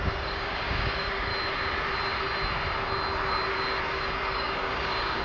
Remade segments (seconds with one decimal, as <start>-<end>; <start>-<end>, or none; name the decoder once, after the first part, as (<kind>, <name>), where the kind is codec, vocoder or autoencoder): 0.0-1.3 (codec, DAC); 3.8-5.2